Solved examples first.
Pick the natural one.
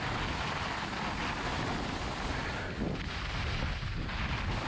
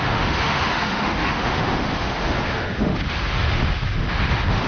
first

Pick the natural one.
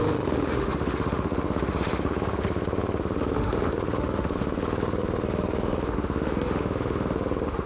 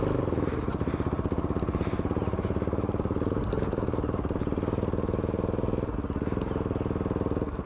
second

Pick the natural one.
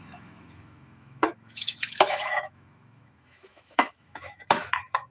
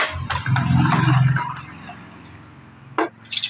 second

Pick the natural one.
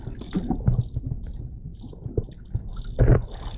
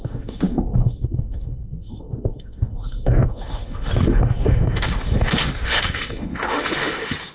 first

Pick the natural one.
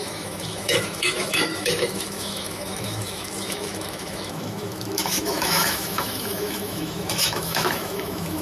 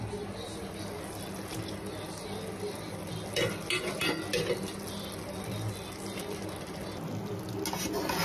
second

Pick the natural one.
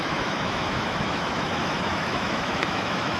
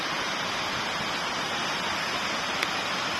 second